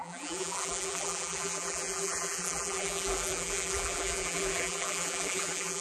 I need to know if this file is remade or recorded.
remade